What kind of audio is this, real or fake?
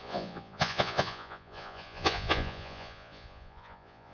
fake